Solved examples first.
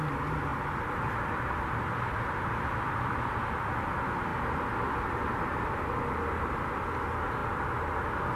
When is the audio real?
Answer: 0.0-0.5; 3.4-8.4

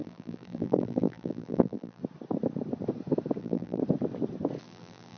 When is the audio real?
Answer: 2.0-3.4; 3.8-4.6

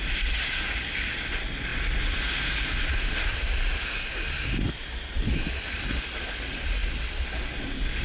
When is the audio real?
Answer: 0.0-8.0

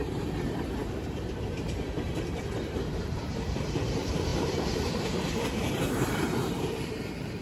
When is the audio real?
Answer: none

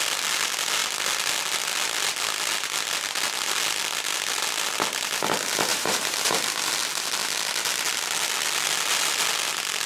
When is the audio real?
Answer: 0.0-5.7; 6.4-9.9

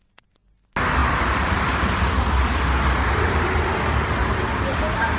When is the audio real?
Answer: 0.0-1.0; 4.1-5.2

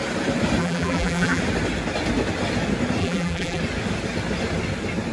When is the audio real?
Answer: 0.0-0.6; 1.4-3.0; 3.6-5.1

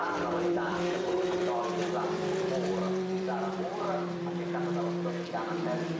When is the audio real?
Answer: 1.4-1.8; 4.2-6.0